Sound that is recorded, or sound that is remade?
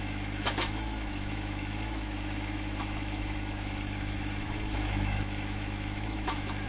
remade